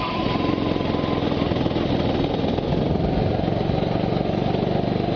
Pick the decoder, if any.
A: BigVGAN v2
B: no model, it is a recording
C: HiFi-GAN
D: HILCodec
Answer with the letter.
B